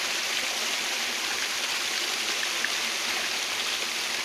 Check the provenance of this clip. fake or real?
real